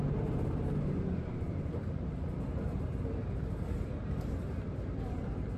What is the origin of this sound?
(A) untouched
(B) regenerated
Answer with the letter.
A